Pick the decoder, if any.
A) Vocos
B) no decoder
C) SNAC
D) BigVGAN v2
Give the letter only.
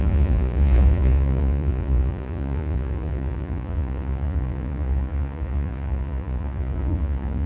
A